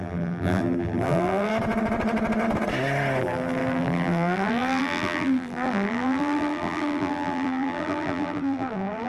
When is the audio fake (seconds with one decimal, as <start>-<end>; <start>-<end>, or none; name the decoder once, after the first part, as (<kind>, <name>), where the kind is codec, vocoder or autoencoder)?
0.0-1.5 (vocoder, BigVGAN v2); 3.2-9.1